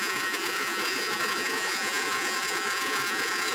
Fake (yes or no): yes